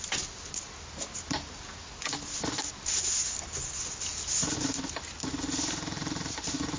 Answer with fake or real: real